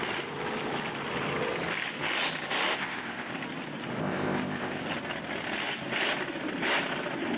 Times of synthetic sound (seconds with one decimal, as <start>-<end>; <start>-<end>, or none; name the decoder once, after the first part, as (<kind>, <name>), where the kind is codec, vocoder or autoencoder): 2.7-3.3 (codec, ZipCodec); 4.0-4.8